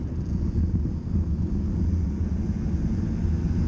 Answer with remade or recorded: recorded